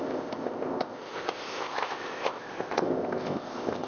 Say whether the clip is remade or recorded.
remade